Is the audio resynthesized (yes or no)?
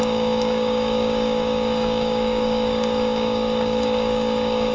yes